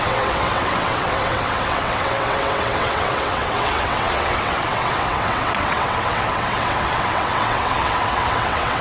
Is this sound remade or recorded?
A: remade